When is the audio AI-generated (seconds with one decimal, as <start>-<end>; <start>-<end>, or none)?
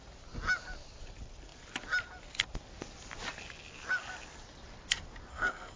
5.3-5.8